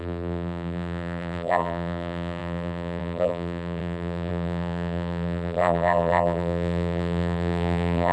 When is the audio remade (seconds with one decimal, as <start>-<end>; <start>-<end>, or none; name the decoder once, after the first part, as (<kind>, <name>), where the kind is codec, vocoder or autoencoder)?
0.0-8.1 (vocoder, BigVGAN v2)